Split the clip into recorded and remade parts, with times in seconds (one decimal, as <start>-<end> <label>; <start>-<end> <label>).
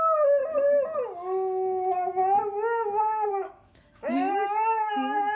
0.0-0.4 remade; 0.4-3.3 recorded; 3.3-5.4 remade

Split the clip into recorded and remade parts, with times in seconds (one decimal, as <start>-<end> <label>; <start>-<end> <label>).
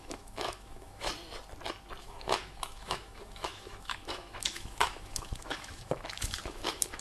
0.0-1.1 remade; 1.1-2.0 recorded; 2.0-7.0 remade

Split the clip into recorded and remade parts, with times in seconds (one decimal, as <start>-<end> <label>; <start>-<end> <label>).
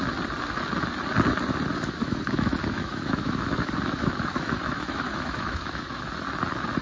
0.0-2.0 recorded; 2.0-6.1 remade; 6.1-6.8 recorded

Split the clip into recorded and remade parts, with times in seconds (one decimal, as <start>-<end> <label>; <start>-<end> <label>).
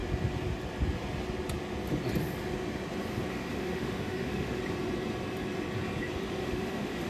0.0-3.3 recorded; 3.3-4.6 remade; 4.6-6.4 recorded; 6.4-7.1 remade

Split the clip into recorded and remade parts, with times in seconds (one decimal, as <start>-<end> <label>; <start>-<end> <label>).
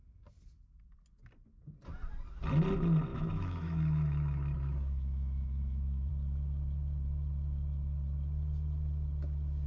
0.0-3.1 recorded; 3.1-6.1 remade; 6.1-9.7 recorded